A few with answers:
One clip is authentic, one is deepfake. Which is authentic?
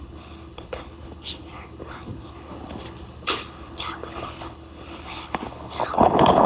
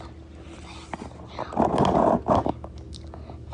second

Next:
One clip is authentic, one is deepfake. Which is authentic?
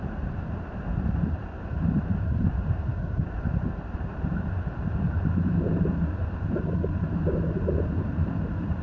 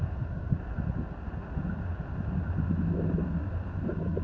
second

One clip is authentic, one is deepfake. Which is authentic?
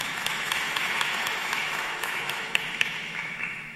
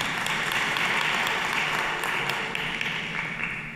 second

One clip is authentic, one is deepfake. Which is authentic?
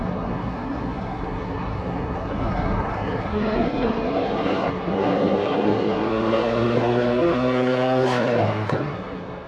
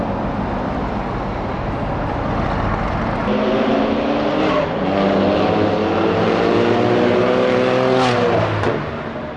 second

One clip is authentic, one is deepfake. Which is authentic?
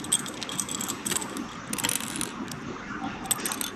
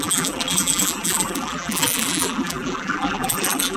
first